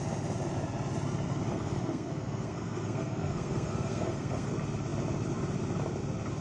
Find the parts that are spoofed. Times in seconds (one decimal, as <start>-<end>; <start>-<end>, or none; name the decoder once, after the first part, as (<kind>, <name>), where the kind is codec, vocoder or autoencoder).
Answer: 1.5-4.5 (codec, SNAC)